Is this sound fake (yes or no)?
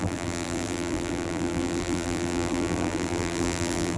yes